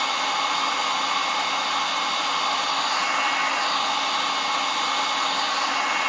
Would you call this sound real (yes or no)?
yes